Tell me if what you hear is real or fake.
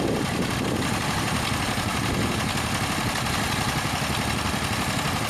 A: real